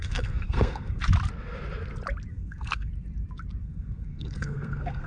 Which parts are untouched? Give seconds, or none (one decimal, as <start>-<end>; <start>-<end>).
1.0-2.3; 2.9-3.6

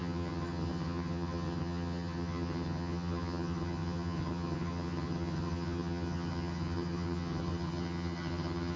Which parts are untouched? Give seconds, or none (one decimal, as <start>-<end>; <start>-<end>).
none

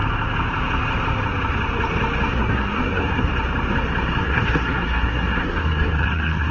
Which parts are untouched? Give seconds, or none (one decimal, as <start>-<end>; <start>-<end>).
0.0-2.3; 3.3-4.2

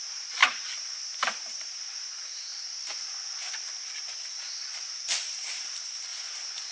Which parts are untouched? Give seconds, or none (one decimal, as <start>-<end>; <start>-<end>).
2.5-4.6; 6.1-6.7

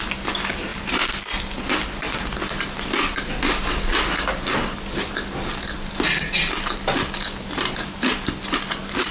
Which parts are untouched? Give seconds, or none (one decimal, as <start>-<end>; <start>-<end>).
0.0-9.1

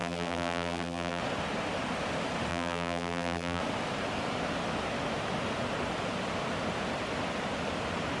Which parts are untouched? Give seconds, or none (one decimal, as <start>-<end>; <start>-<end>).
1.2-2.5; 3.6-8.2

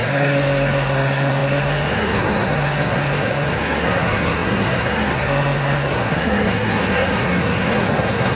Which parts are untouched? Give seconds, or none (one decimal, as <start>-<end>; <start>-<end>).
none